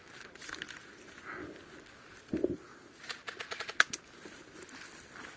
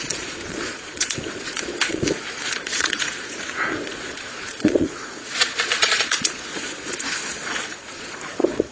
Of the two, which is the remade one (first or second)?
second